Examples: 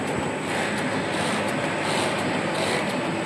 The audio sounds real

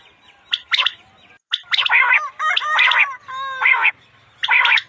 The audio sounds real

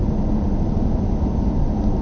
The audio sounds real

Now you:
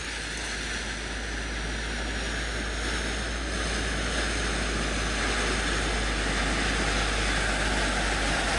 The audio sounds real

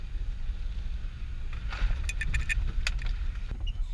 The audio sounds real